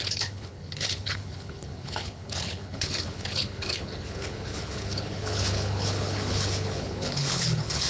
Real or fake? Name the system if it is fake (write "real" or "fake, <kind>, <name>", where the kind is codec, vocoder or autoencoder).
fake, codec, HILCodec